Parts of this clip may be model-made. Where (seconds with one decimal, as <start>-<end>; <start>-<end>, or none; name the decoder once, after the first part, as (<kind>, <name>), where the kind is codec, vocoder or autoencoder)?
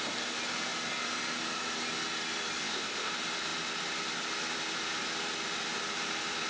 2.6-3.1 (codec, ZipCodec)